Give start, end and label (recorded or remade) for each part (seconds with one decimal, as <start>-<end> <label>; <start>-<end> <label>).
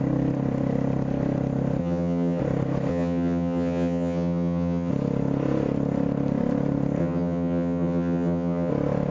0.0-1.8 recorded; 1.8-2.4 remade; 2.4-2.9 recorded; 2.9-4.9 remade; 4.9-7.0 recorded; 7.0-8.7 remade; 8.7-9.1 recorded